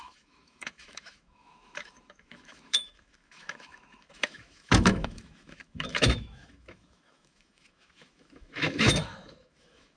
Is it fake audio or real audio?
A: fake